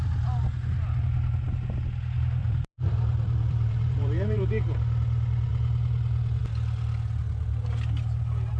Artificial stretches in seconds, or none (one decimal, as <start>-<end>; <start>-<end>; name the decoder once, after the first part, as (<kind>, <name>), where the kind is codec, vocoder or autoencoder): 2.4-4.4 (vocoder, BigVGAN v2)